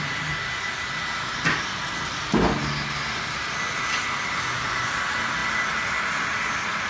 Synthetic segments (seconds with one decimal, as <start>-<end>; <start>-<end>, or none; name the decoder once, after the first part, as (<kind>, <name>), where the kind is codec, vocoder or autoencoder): none